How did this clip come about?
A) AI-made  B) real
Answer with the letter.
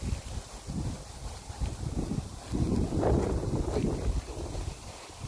A